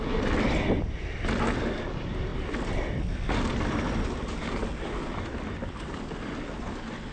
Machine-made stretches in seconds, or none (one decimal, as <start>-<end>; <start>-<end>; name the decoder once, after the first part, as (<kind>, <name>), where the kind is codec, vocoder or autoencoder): none